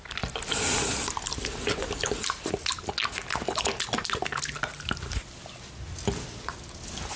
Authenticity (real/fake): real